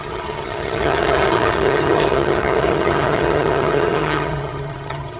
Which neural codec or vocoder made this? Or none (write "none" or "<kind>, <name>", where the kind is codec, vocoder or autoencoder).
vocoder, HiFi-GAN